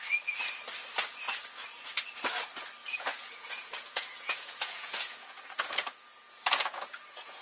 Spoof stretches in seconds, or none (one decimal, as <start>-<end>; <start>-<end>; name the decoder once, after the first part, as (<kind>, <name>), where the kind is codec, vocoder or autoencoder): 2.8-7.4 (vocoder, Vocos)